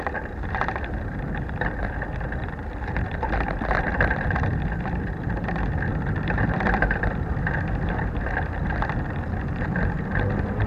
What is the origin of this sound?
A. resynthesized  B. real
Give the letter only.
A